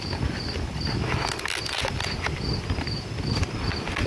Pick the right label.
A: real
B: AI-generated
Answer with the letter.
A